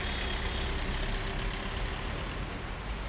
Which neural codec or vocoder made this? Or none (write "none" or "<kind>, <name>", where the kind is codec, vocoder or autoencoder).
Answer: none